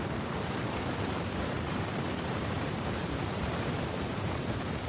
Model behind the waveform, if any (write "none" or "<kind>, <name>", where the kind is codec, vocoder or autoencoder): vocoder, BigVGAN v2